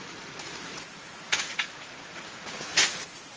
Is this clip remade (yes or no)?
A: yes